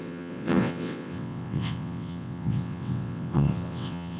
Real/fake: fake